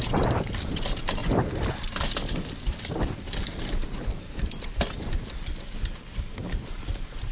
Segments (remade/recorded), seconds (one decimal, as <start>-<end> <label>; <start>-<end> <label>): 0.0-7.3 recorded